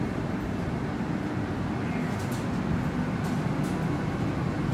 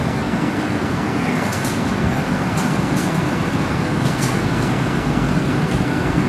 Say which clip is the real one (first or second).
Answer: first